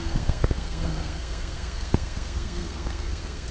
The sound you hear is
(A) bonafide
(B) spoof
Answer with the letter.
B